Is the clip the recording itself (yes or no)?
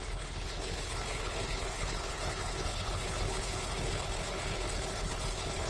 no